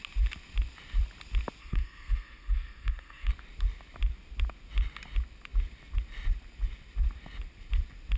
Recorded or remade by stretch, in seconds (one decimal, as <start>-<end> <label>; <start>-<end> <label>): 0.0-1.6 recorded; 1.6-3.3 remade; 3.3-8.2 recorded